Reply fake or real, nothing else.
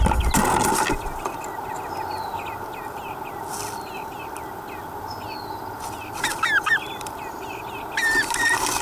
real